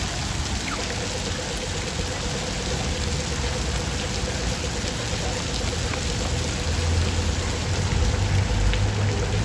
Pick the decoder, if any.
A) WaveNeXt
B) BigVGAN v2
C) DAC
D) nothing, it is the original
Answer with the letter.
D